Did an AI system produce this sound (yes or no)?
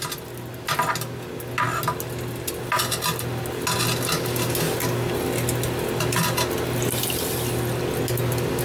no